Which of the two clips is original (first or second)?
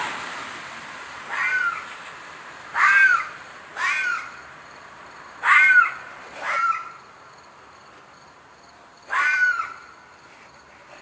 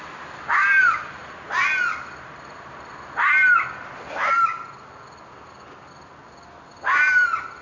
second